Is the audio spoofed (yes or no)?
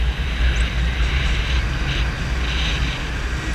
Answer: no